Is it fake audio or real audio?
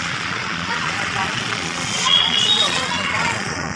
fake